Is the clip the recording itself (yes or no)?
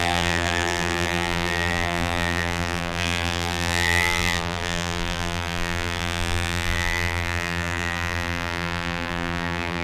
no